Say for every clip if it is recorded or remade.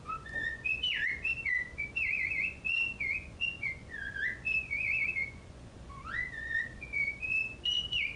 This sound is remade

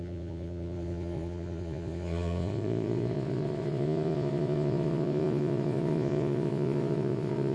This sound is remade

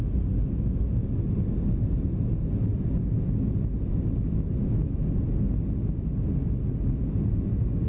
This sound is recorded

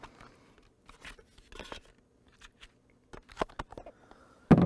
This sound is recorded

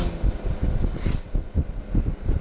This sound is recorded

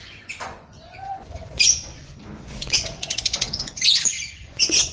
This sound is remade